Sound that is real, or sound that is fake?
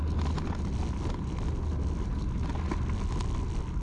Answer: real